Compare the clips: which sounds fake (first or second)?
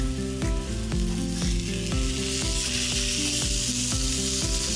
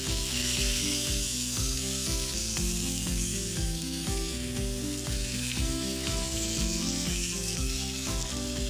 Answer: second